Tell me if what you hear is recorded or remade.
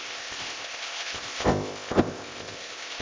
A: remade